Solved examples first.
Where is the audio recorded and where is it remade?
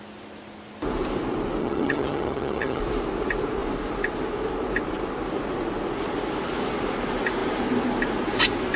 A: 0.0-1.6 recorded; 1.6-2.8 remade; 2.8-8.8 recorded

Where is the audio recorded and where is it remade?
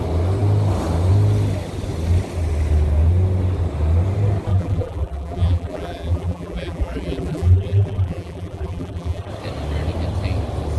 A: 0.0-4.5 recorded; 4.5-9.3 remade; 9.3-10.8 recorded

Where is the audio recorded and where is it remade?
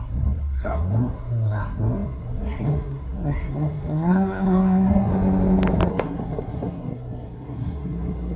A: 0.0-5.1 remade; 5.1-5.9 recorded; 5.9-8.4 remade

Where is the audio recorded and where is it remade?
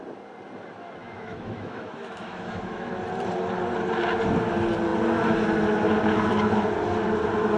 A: 0.0-1.0 recorded; 1.0-2.9 remade; 2.9-7.6 recorded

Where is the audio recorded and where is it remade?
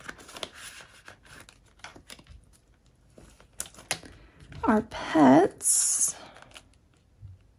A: 0.0-7.6 recorded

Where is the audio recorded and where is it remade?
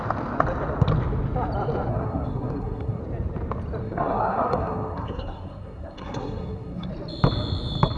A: 0.0-1.9 recorded; 1.9-3.0 remade; 3.0-3.8 recorded; 3.8-6.9 remade; 6.9-8.0 recorded